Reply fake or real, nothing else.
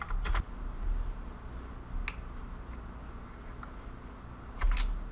real